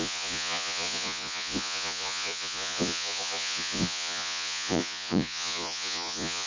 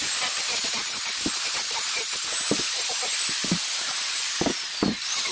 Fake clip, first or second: first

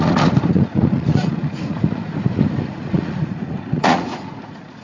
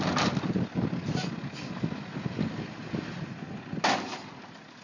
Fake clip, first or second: first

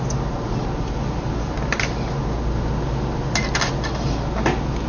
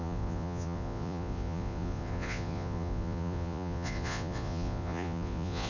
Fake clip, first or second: second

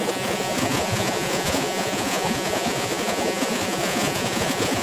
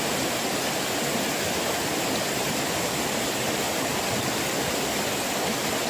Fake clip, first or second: first